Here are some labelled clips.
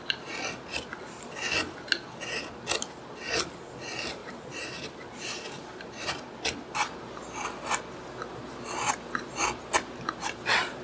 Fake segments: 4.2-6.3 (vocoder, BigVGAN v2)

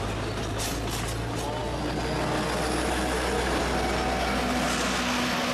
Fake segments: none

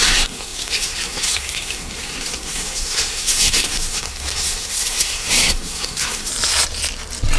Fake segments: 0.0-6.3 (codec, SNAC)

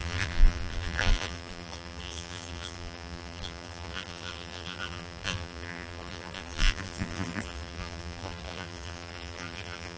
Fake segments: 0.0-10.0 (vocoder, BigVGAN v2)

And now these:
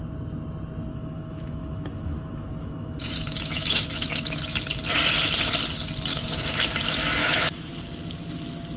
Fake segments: 0.9-4.4 (autoencoder, DAC-VAE); 6.1-6.6; 7.2-7.7

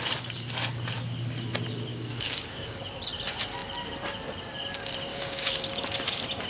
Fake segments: 1.9-2.8 (codec, DAC); 5.1-5.6